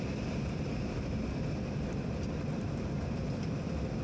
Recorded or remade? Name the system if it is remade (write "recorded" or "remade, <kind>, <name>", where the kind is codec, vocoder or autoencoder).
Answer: remade, vocoder, BigVGAN v2